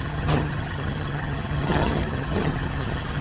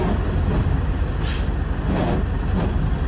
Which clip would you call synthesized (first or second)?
first